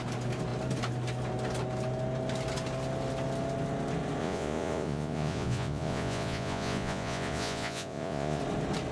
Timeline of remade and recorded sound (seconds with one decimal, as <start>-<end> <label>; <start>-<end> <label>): 0.0-4.2 recorded; 4.2-8.4 remade; 8.4-8.9 recorded

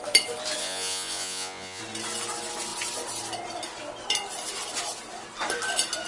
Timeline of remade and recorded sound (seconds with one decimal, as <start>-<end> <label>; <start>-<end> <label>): 0.0-0.6 recorded; 0.6-1.8 remade; 1.8-6.1 recorded